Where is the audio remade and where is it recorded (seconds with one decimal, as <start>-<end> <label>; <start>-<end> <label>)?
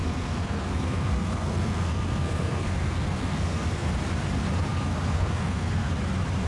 0.0-3.9 remade; 3.9-4.7 recorded; 4.7-5.9 remade; 5.9-6.5 recorded